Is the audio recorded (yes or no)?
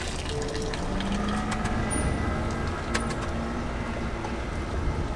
yes